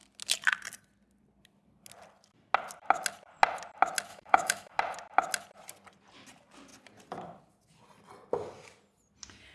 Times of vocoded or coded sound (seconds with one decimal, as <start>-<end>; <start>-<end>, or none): 4.1-4.8